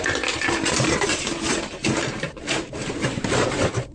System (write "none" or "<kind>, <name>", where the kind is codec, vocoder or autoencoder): vocoder, BigVGAN v2